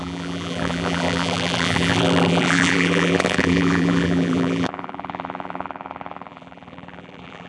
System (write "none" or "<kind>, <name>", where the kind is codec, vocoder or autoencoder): vocoder, BigVGAN v2